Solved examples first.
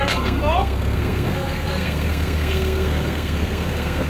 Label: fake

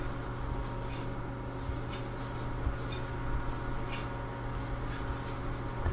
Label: real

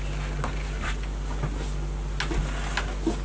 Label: real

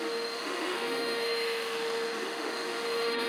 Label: fake